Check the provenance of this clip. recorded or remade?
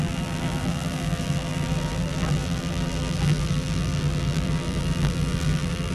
remade